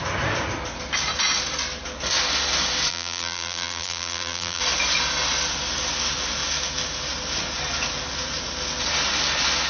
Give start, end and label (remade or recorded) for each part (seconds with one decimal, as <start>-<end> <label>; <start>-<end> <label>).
0.0-2.9 recorded; 2.9-4.6 remade; 4.6-9.7 recorded

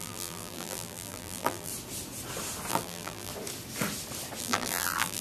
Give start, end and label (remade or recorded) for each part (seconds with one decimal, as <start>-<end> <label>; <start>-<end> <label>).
0.0-1.7 remade; 1.7-2.7 recorded; 2.7-3.3 remade; 3.3-4.4 recorded; 4.4-5.2 remade

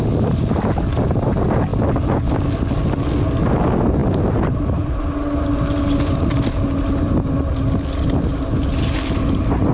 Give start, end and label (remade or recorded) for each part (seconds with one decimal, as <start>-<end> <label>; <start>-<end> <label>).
0.0-9.7 recorded